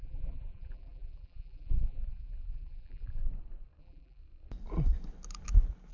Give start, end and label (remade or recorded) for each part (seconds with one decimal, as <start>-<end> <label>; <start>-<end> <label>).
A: 0.0-3.2 remade; 3.2-3.8 recorded; 3.8-4.2 remade; 4.2-5.9 recorded